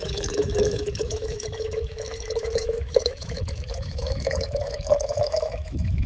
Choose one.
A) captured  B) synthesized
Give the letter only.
B